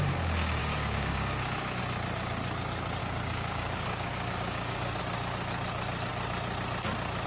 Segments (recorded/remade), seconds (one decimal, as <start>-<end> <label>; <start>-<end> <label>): 0.0-0.6 recorded; 0.6-1.8 remade; 1.8-3.0 recorded; 3.0-5.0 remade; 5.0-7.3 recorded